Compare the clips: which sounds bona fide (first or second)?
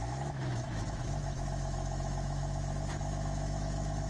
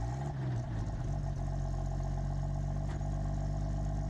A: second